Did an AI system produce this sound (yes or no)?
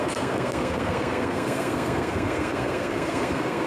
yes